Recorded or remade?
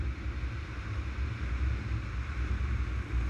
recorded